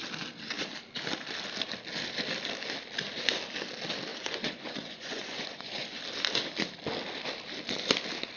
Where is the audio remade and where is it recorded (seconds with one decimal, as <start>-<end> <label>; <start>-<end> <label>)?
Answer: 0.0-4.1 recorded; 4.1-6.0 remade; 6.0-8.4 recorded